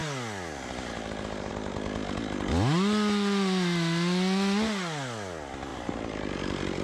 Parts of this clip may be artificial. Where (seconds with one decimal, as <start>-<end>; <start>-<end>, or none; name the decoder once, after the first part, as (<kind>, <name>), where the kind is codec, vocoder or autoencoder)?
5.7-6.8 (vocoder, BigVGAN v2)